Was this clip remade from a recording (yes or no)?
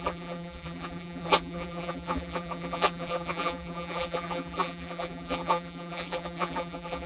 yes